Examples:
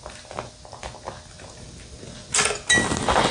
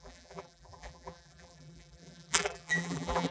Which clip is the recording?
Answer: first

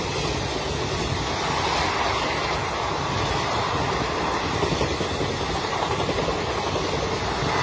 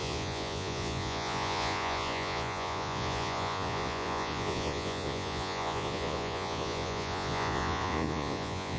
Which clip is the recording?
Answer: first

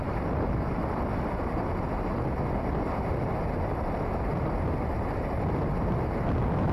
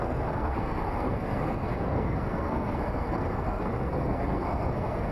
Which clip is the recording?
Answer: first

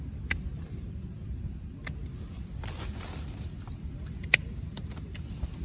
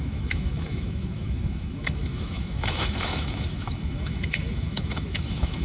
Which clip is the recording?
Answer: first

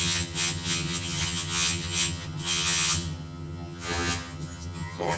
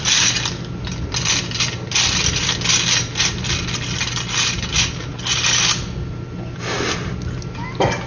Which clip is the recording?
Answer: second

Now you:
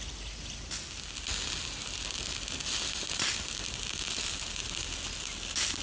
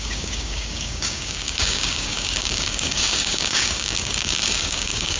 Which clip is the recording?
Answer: first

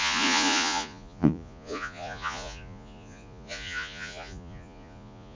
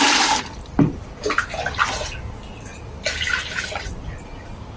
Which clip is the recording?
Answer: second